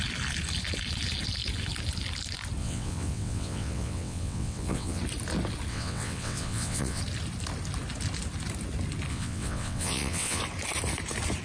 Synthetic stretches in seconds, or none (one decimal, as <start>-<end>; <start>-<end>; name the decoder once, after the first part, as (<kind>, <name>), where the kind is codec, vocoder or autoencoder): 2.6-5.0 (vocoder, WaveNeXt); 5.7-7.0; 9.1-10.4